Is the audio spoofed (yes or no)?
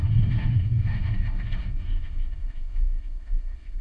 yes